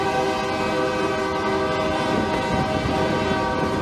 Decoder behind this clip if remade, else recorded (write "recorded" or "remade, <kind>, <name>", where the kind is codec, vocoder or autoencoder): recorded